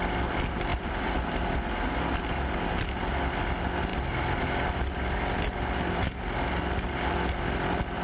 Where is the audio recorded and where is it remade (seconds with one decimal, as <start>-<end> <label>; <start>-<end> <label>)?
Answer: 0.0-0.7 recorded; 0.7-1.5 remade; 1.5-8.0 recorded